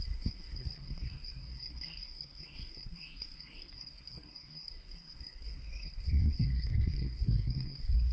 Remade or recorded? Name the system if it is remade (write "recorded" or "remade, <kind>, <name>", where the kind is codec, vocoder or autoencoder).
remade, codec, SNAC